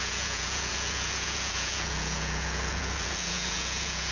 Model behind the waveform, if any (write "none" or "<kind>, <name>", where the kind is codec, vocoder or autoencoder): vocoder, Vocos